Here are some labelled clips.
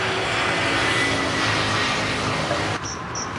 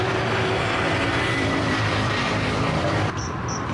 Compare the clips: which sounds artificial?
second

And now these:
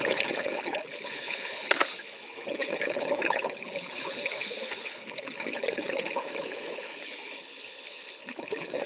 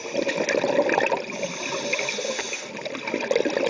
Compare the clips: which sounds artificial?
first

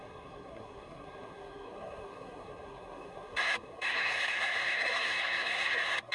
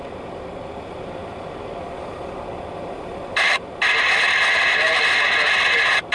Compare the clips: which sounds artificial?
first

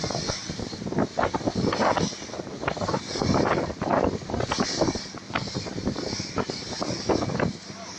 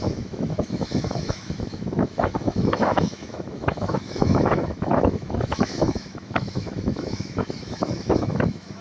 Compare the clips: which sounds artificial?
second